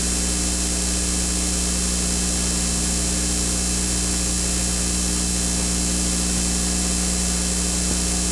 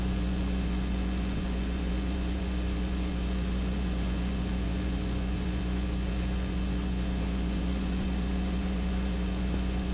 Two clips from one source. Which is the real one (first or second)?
first